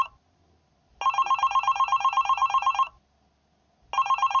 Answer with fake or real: real